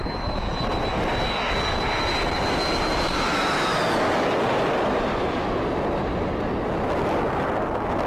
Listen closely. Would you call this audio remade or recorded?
recorded